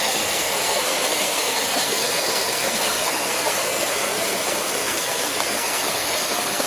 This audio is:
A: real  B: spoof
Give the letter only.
B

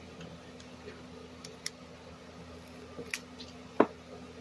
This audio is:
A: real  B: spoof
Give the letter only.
A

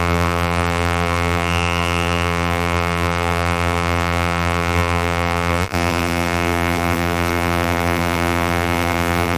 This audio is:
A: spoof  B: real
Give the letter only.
A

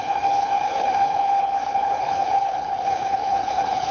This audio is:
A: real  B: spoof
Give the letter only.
B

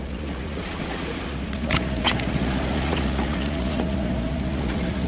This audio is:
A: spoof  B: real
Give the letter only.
A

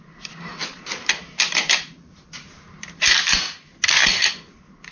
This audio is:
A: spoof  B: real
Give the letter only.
B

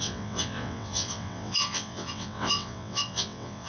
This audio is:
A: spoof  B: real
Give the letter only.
A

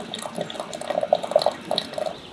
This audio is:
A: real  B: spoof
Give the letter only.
A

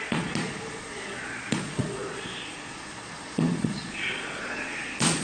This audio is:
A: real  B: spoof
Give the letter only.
B